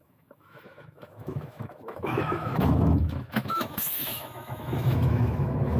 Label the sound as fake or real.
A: fake